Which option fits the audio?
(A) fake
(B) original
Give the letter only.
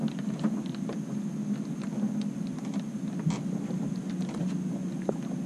B